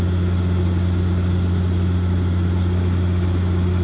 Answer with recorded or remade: recorded